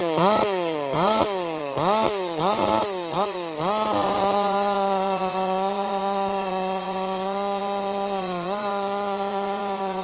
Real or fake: fake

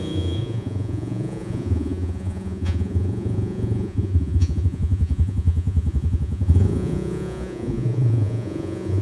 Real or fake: fake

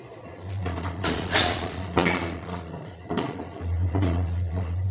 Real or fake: fake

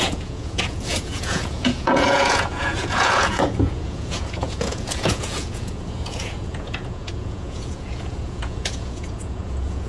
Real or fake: fake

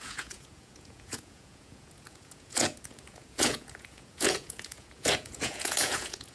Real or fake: fake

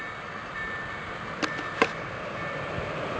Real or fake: real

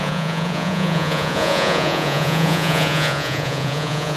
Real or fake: fake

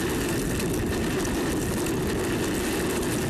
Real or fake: real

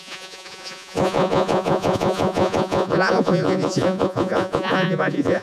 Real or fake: fake